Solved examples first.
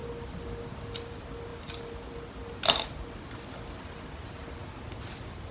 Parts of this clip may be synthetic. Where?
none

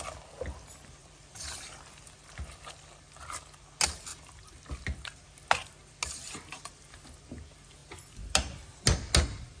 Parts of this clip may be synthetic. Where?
1.0-3.0 (vocoder, BigVGAN v2); 4.1-5.2

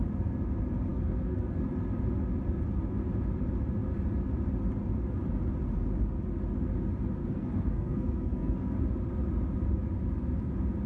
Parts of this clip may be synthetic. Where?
0.9-1.6 (codec, SNAC); 7.2-8.8

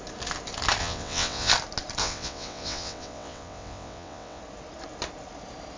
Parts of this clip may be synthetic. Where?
0.8-1.5 (vocoder, WaveNeXt); 2.0-4.4

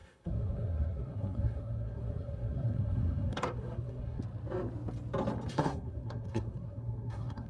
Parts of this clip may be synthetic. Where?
0.0-4.2 (codec, SNAC); 5.5-7.5

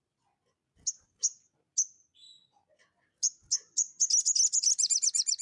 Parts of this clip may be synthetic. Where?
none

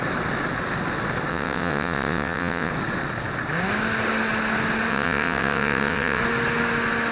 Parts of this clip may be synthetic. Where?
1.3-2.7 (vocoder, WaveNeXt); 4.9-6.2